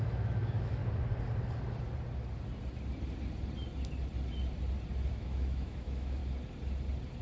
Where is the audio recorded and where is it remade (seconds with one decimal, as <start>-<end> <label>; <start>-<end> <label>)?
0.0-0.8 remade; 0.8-5.1 recorded; 5.1-6.2 remade; 6.2-7.2 recorded

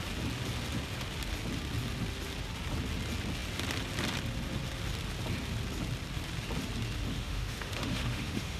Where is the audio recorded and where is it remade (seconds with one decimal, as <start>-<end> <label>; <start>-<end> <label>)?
0.0-7.1 recorded; 7.1-8.6 remade

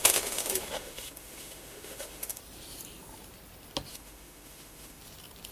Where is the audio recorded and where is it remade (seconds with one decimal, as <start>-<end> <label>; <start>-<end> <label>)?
0.0-2.4 remade; 2.4-3.9 recorded; 3.9-5.0 remade; 5.0-5.5 recorded

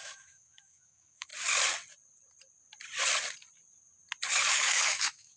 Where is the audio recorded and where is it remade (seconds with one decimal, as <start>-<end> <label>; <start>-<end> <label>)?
0.0-1.3 remade; 1.3-4.5 recorded; 4.5-5.4 remade

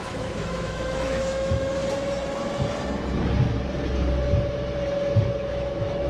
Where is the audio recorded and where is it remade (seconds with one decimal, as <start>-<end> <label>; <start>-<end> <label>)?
0.0-1.8 remade; 1.8-5.5 recorded; 5.5-6.1 remade

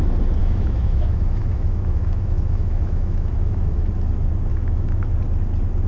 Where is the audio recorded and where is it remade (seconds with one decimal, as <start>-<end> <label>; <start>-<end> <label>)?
0.0-0.4 recorded; 0.4-3.9 remade; 3.9-4.5 recorded; 4.5-5.1 remade; 5.1-5.9 recorded

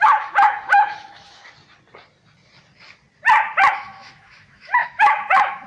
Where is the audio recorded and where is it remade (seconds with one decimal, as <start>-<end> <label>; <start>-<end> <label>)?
0.0-1.4 remade; 1.4-3.7 recorded; 3.7-5.7 remade

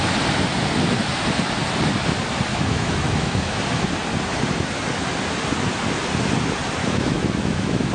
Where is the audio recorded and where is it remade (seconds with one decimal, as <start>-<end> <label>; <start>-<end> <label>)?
0.0-2.5 recorded; 2.5-3.6 remade; 3.6-6.8 recorded; 6.8-7.9 remade